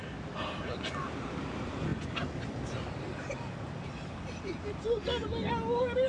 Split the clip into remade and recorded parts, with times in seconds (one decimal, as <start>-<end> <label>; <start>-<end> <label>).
0.0-6.1 recorded

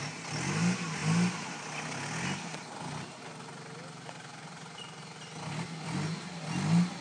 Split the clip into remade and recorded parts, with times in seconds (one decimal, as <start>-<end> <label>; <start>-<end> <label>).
0.0-7.0 recorded